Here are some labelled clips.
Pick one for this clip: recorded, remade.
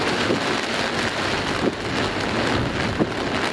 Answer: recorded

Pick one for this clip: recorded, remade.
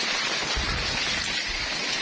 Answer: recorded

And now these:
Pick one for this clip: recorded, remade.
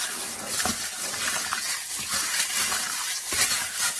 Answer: recorded